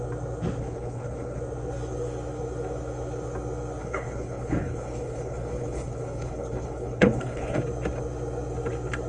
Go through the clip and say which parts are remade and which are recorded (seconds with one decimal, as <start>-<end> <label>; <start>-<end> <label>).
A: 0.0-0.6 recorded; 0.6-1.4 remade; 1.4-3.8 recorded; 3.8-7.6 remade; 7.6-9.1 recorded